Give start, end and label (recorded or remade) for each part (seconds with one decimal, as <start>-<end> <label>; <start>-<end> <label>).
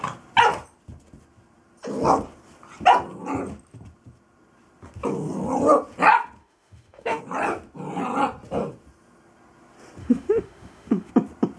0.0-6.4 recorded; 6.4-7.2 remade; 7.2-10.0 recorded; 10.0-11.1 remade; 11.1-11.6 recorded